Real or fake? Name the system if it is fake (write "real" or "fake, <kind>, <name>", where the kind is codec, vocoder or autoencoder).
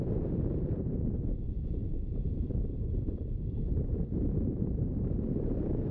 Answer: fake, vocoder, BigVGAN v2